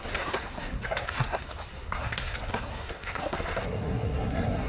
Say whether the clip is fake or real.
fake